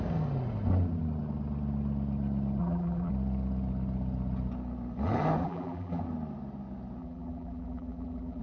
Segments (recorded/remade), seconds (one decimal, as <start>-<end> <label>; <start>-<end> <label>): 0.0-2.6 recorded; 2.6-3.1 remade; 3.1-5.4 recorded; 5.4-6.0 remade; 6.0-7.0 recorded; 7.0-8.4 remade